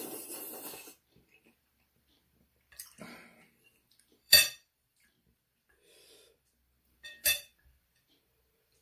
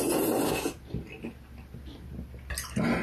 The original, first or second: second